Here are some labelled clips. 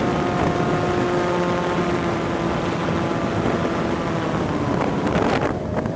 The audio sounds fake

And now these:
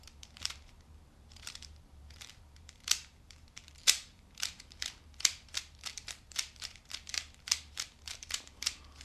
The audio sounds fake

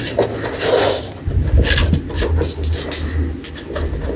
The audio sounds real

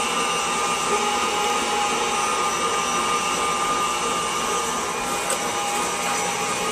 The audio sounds real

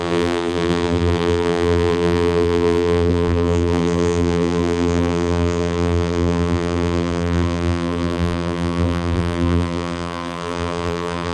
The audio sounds fake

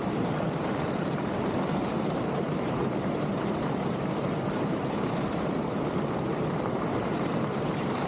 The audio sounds fake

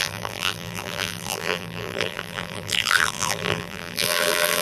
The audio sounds fake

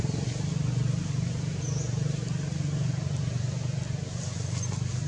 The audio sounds real